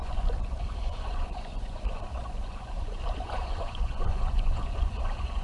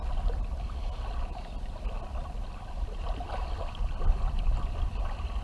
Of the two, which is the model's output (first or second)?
first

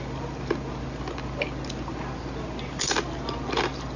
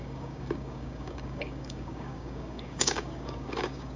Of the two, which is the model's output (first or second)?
second